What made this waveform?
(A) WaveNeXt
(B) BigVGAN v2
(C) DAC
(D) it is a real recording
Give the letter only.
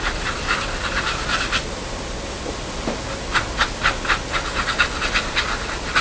D